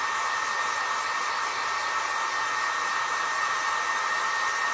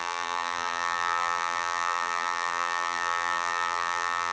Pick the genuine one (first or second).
first